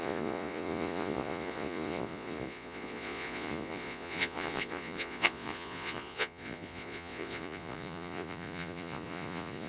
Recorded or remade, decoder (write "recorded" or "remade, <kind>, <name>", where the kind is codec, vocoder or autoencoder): remade, vocoder, Vocos